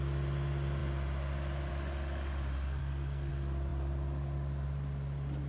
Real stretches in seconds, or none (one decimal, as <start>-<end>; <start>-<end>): 0.0-2.8; 3.3-5.5